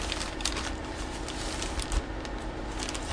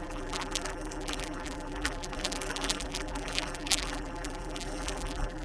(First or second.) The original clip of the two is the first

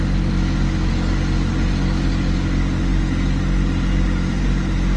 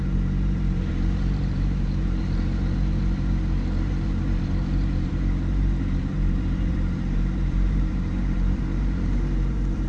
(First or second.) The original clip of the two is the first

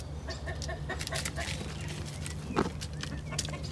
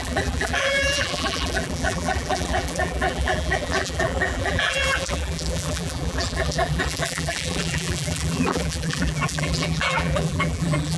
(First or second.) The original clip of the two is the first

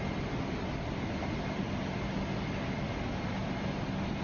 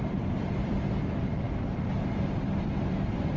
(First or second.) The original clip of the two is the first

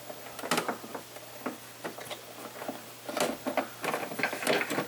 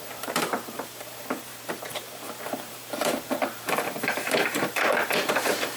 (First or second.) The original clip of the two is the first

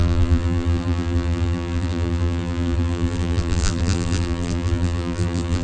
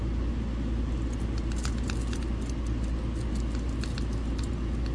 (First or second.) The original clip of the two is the second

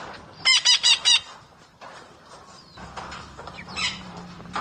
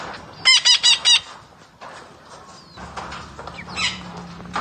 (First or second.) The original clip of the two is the second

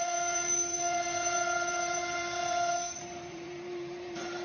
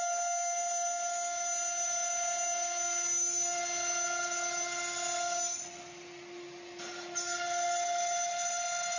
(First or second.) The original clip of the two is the second